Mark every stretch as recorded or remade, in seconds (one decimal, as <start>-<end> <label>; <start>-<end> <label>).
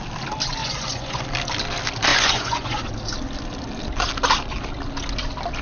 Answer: 0.0-0.6 recorded; 0.6-1.2 remade; 1.2-2.1 recorded; 2.1-2.9 remade; 2.9-5.6 recorded